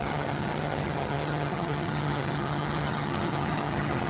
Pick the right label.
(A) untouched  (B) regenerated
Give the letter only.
B